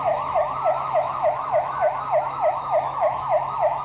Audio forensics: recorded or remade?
remade